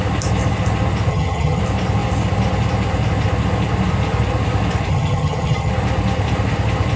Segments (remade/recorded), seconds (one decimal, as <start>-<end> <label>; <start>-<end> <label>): 0.0-1.1 recorded; 1.1-1.6 remade; 1.6-4.9 recorded; 4.9-5.7 remade; 5.7-7.0 recorded